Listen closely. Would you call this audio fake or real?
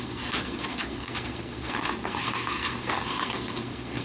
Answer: fake